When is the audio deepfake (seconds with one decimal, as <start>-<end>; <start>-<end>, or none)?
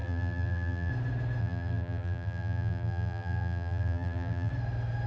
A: 0.0-0.9; 1.4-4.5